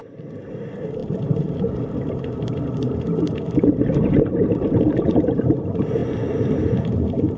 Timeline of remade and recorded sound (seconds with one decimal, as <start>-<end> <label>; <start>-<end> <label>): 0.0-7.4 remade